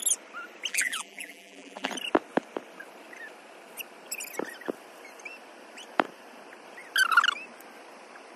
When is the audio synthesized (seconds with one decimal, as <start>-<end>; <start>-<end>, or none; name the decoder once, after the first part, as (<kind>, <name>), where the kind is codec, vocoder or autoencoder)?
0.7-1.9 (vocoder, BigVGAN v2)